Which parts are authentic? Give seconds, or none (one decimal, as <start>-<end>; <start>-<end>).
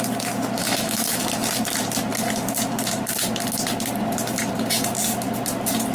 0.0-0.6; 1.2-5.9